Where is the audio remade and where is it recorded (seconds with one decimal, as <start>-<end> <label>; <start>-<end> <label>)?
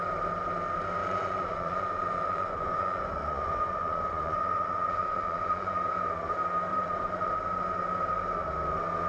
0.0-1.0 recorded; 1.0-5.8 remade; 5.8-6.7 recorded; 6.7-7.3 remade; 7.3-9.1 recorded